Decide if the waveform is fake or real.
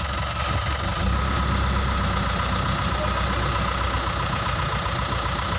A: real